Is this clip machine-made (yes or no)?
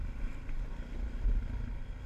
no